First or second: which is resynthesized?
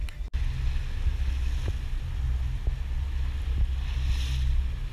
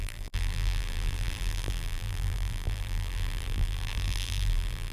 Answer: second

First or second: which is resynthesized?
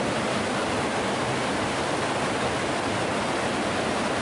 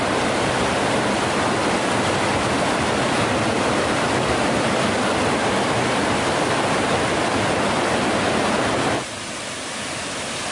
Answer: second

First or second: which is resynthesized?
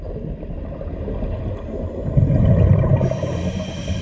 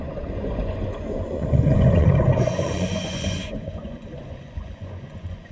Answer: second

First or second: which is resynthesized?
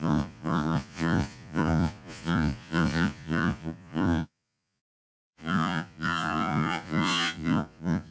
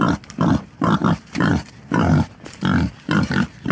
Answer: first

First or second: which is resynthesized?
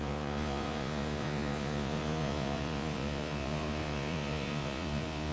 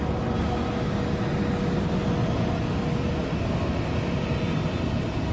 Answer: first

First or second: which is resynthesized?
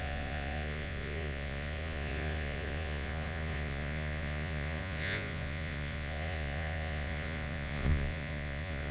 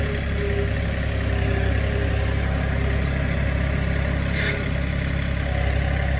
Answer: first